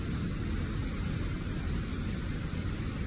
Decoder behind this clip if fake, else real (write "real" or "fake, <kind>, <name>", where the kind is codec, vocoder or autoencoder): real